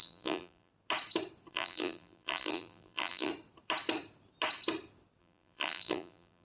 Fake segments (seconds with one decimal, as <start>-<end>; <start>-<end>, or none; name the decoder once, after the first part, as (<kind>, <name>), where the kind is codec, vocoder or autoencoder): 0.0-0.7 (vocoder, BigVGAN v2); 1.5-3.3; 5.2-6.4